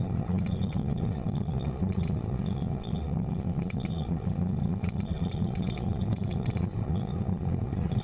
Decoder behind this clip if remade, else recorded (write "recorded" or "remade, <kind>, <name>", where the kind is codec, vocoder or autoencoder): remade, vocoder, Vocos